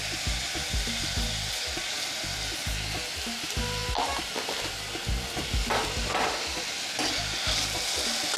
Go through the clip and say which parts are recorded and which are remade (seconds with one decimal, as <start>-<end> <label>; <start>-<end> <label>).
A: 0.0-8.4 recorded